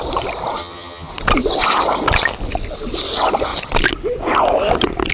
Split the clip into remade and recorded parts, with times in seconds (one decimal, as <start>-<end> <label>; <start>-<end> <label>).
0.0-0.6 recorded; 0.6-1.1 remade; 1.1-5.1 recorded